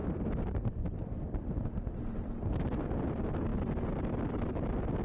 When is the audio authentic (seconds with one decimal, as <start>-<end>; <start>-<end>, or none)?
3.0-5.0